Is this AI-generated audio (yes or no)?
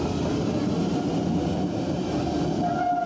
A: no